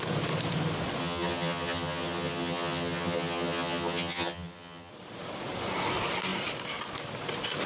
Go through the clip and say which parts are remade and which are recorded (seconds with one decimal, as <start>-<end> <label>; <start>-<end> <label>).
0.0-1.0 recorded; 1.0-4.9 remade; 4.9-7.7 recorded